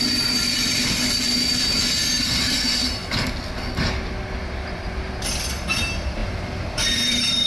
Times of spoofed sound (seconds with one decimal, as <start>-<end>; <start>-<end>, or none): none